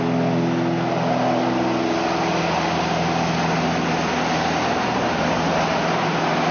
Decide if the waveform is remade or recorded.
recorded